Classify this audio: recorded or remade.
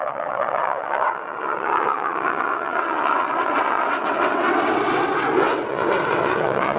remade